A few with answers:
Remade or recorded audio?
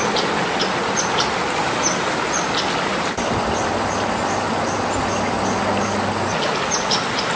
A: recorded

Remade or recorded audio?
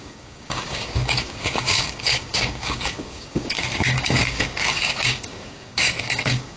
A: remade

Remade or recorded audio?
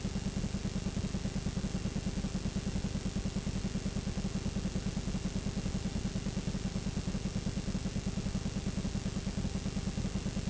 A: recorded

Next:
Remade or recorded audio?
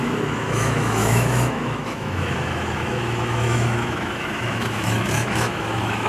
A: remade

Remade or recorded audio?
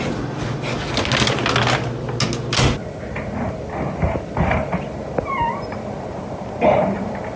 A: recorded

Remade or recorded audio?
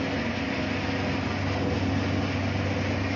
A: recorded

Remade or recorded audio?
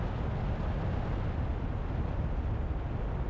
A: recorded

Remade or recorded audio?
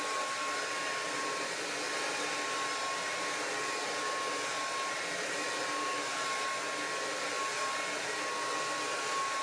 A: recorded